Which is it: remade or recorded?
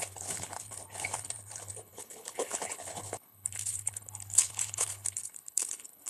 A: remade